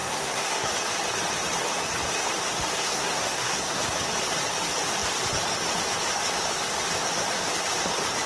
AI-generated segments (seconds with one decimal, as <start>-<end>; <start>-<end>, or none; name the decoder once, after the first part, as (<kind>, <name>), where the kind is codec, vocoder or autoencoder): 0.0-0.7 (codec, SNAC); 2.8-3.8